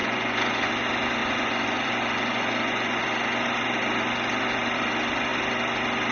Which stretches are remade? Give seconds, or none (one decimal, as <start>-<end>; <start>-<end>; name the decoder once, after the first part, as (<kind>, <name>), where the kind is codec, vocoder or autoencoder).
0.0-0.7 (vocoder, Vocos); 1.2-3.0